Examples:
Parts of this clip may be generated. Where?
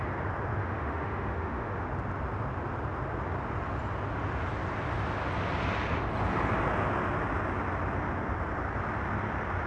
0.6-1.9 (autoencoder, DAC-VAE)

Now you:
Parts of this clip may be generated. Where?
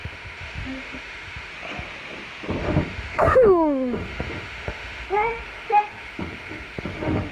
0.0-1.5 (autoencoder, DAC-VAE); 2.6-7.3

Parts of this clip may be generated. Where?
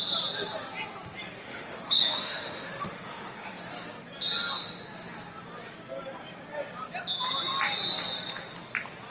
1.4-3.6 (autoencoder, DAC-VAE)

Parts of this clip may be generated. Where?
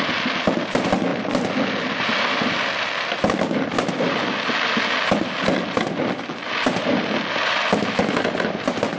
none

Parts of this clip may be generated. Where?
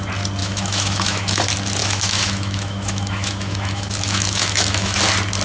0.4-1.4 (autoencoder, DAC-VAE); 1.8-5.0